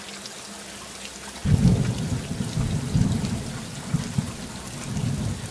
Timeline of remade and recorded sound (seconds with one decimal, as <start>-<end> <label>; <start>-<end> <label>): 0.0-5.5 recorded